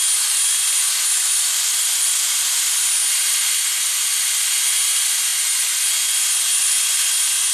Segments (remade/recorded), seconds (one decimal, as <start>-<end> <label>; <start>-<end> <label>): 0.0-7.5 recorded